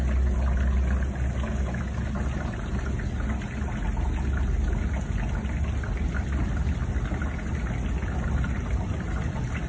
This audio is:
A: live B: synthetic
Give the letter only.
A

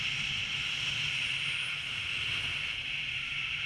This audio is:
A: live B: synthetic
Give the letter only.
A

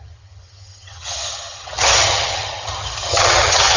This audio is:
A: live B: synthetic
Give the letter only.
B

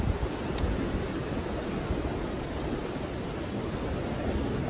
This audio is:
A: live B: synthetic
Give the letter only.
A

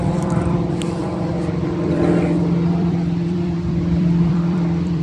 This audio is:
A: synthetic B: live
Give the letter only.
A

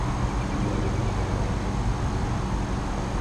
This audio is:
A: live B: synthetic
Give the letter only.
A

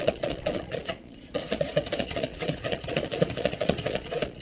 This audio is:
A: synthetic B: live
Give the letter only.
A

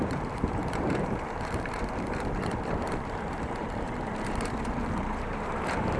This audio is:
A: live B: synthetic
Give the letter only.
B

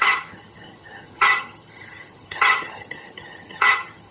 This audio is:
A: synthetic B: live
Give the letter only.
A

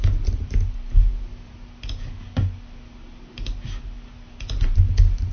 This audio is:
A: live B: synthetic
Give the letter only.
A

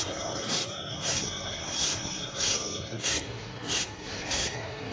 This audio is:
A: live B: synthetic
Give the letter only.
B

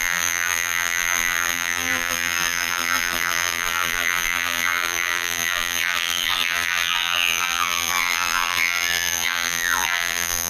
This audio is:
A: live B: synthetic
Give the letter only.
B